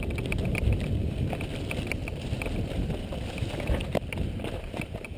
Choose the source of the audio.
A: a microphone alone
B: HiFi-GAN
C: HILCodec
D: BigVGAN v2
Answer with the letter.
D